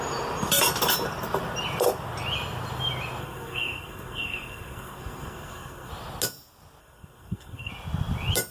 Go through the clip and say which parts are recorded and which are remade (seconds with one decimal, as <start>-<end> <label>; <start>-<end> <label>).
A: 0.0-3.2 recorded; 3.2-5.9 remade; 5.9-6.8 recorded; 6.8-7.7 remade; 7.7-8.5 recorded